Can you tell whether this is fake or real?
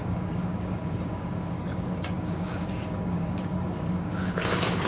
fake